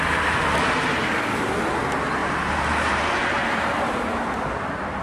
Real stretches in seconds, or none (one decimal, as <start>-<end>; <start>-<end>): 0.0-1.0; 1.5-2.2; 3.0-3.4; 4.0-5.0